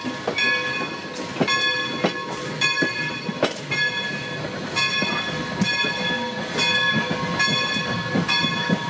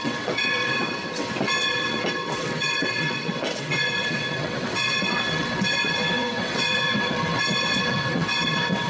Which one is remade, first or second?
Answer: second